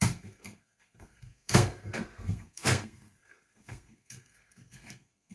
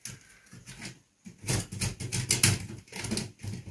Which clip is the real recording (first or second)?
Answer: second